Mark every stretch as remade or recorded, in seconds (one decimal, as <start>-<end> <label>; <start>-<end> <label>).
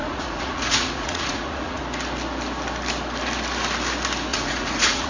0.0-1.8 remade; 1.8-4.3 recorded; 4.3-5.1 remade